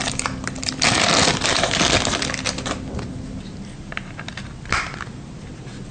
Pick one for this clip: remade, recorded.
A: recorded